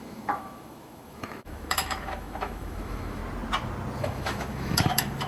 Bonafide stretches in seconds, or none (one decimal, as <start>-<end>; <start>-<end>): 3.2-4.0